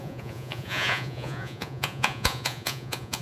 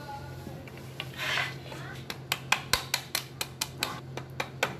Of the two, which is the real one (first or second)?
second